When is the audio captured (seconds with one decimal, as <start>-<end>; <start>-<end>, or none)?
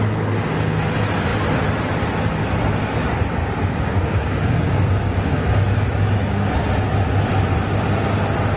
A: 0.0-3.4; 6.5-8.6